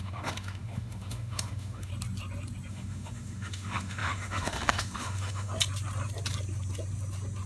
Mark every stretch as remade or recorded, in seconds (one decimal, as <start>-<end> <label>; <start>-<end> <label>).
0.0-1.9 remade; 1.9-2.7 recorded; 2.7-5.5 remade; 5.5-7.5 recorded